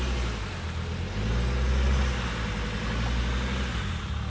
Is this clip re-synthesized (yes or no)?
no